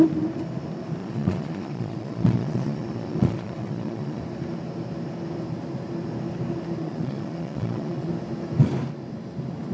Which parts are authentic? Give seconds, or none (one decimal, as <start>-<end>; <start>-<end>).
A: 0.0-1.0; 4.2-6.8; 8.1-9.7